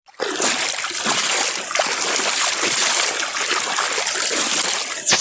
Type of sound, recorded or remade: recorded